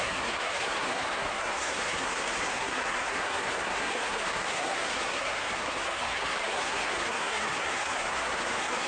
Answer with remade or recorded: remade